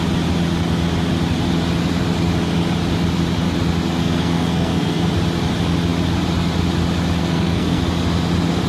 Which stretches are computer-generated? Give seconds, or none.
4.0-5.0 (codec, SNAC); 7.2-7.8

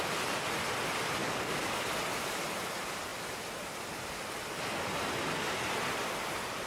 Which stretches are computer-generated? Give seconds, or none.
1.2-1.8 (codec, DAC)

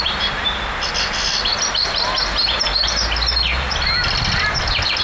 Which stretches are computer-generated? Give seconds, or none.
none